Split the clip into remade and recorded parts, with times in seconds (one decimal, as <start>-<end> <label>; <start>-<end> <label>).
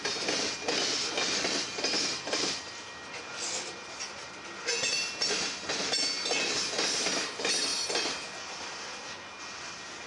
0.0-10.1 recorded